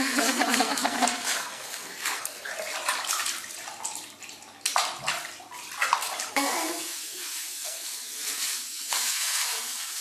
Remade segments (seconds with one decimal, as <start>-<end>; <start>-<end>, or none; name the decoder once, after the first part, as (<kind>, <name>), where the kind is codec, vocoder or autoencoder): 0.0-2.5 (codec, SNAC); 6.3-10.0